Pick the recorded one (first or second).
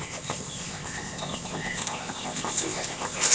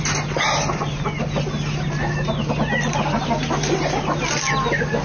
second